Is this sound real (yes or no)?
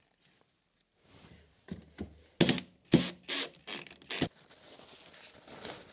yes